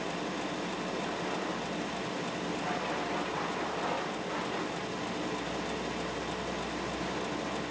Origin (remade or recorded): recorded